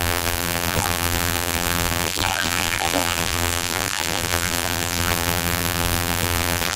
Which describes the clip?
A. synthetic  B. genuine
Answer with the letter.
A